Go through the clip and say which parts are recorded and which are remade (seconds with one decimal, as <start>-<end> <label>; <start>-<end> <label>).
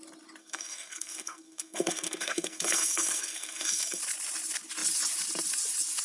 0.0-0.4 recorded; 0.4-4.0 remade; 4.0-6.0 recorded